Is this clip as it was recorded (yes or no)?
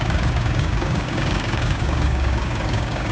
no